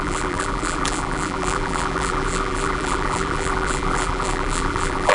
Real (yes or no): no